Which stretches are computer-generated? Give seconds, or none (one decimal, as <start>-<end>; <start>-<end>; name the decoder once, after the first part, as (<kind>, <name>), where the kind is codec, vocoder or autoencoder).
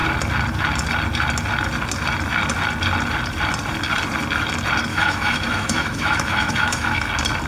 4.9-7.1 (autoencoder, DAC-VAE)